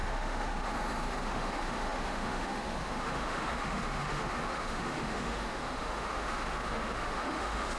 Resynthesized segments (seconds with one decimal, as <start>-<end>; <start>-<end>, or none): 0.0-7.8